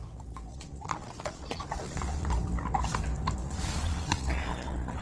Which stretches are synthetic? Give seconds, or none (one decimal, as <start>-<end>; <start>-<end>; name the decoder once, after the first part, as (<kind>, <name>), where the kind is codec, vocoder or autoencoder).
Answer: 0.5-2.3 (vocoder, Vocos); 3.4-5.0